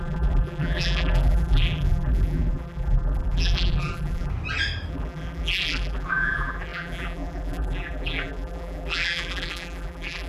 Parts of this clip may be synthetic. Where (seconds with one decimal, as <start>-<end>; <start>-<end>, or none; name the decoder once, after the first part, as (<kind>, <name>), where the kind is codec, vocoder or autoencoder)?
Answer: 0.0-4.3 (vocoder, BigVGAN v2); 4.9-10.3